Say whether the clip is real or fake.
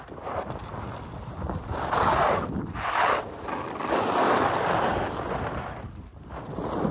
real